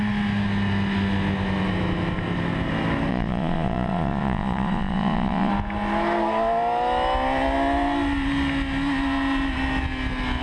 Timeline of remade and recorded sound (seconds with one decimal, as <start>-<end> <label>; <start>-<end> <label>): 0.0-3.1 recorded; 3.1-5.5 remade; 5.5-10.4 recorded